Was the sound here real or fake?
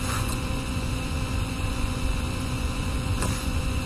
fake